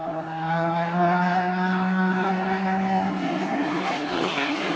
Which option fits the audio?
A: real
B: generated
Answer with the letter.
B